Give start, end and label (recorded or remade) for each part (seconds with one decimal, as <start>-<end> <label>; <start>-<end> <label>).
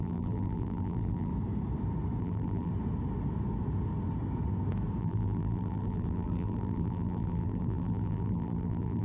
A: 0.0-1.3 remade; 1.3-2.2 recorded; 2.2-2.7 remade; 2.7-5.0 recorded; 5.0-9.0 remade